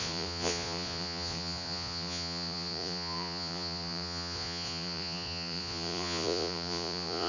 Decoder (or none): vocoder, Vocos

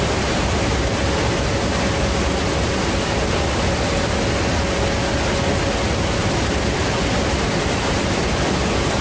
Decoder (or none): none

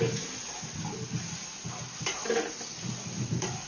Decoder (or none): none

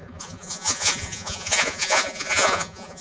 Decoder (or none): vocoder, Vocos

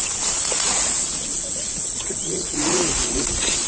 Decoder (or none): vocoder, Vocos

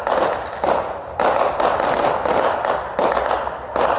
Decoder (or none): none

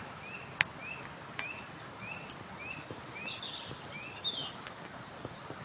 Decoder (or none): none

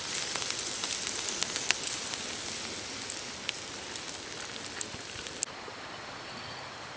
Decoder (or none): none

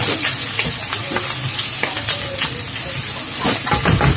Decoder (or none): none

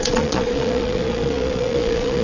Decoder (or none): vocoder, Vocos